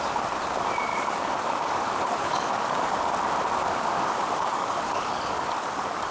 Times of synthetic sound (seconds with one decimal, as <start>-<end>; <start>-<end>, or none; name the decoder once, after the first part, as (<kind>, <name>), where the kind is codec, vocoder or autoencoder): 0.9-3.0 (codec, DAC); 3.6-6.1